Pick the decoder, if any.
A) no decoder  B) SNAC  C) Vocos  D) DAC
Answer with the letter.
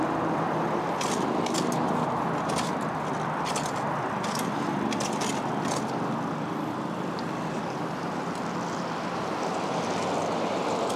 A